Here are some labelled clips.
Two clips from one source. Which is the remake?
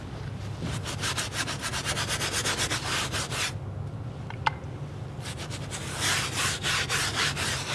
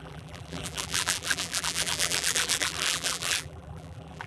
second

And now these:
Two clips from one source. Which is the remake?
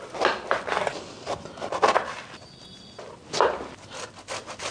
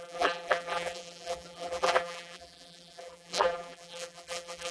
second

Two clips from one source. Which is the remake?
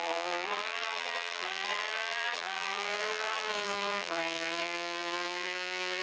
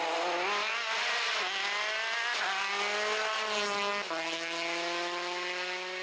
first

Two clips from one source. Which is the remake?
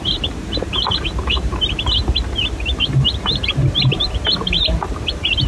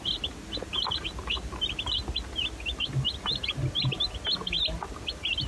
first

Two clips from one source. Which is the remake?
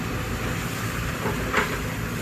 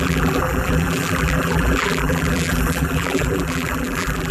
second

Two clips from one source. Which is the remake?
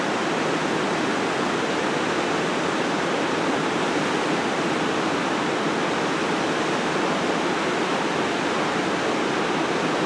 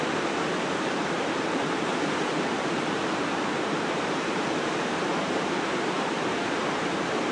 second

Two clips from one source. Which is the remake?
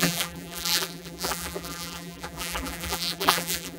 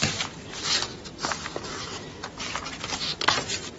first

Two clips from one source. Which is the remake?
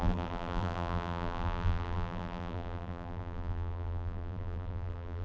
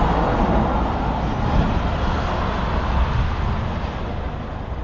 first